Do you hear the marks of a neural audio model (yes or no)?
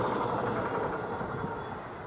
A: no